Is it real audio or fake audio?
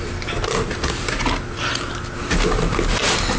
real